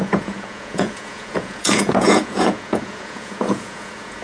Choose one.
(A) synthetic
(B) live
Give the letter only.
A